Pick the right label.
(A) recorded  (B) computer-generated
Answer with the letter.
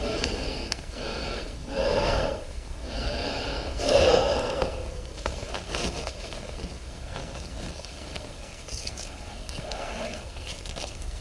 B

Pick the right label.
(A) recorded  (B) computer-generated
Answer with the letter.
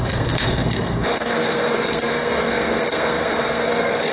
B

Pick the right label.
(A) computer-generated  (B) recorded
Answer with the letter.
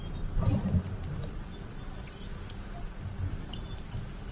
B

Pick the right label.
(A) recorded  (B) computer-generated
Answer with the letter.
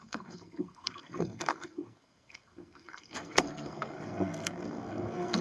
B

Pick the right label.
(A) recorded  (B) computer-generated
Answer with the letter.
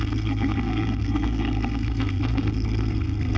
B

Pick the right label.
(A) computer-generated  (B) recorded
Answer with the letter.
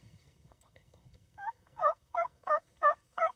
A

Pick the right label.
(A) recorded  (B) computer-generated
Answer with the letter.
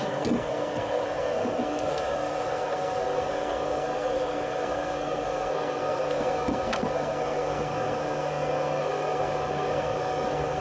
B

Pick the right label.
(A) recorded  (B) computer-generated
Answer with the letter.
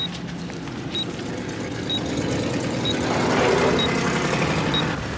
A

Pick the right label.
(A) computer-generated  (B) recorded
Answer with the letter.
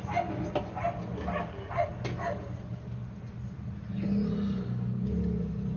B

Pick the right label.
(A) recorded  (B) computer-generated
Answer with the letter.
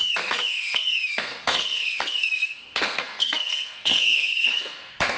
B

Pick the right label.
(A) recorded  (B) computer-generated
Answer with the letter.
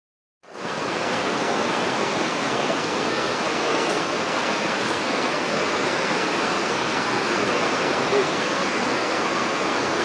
B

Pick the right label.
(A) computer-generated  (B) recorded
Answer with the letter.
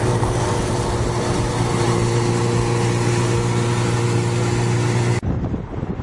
B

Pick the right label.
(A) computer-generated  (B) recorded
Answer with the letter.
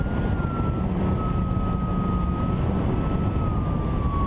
B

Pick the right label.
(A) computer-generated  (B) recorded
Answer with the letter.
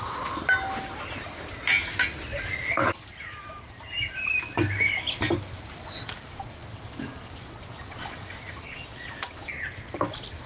B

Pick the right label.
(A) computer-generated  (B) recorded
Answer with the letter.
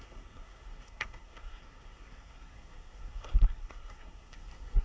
A